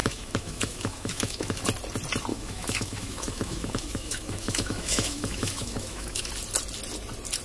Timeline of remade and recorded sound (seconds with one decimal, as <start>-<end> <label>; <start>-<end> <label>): 0.0-1.6 remade; 1.6-2.3 recorded; 2.3-6.3 remade; 6.3-7.4 recorded